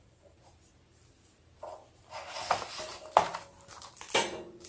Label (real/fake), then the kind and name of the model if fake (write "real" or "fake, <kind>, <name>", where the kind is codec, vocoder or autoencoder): real